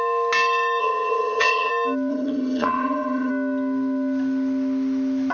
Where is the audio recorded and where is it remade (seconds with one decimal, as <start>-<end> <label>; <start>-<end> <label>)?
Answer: 0.0-0.8 recorded; 0.8-1.7 remade; 1.7-2.1 recorded; 2.1-3.3 remade; 3.3-5.3 recorded